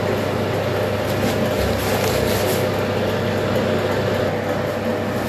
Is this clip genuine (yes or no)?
yes